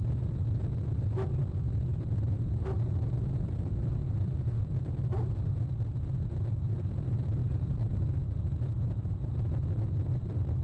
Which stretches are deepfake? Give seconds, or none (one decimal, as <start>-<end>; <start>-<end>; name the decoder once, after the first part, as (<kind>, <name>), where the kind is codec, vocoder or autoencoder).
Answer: 4.0-5.6 (vocoder, BigVGAN v2)